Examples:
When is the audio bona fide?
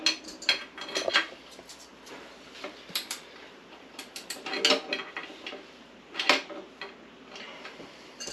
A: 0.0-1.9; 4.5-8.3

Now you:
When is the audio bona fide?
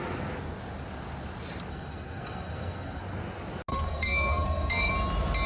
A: 0.0-1.7; 3.0-3.7; 4.9-5.5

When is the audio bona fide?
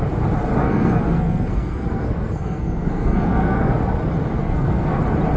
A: 0.0-0.6; 3.8-4.4; 5.0-5.4